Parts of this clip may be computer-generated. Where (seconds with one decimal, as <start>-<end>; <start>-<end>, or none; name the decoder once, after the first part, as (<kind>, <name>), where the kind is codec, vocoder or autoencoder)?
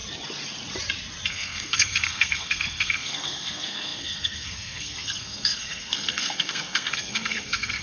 1.3-7.8 (codec, SNAC)